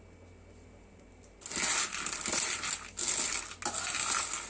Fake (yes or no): no